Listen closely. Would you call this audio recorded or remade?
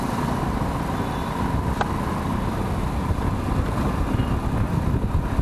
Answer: recorded